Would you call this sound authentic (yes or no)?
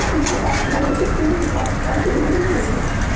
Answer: yes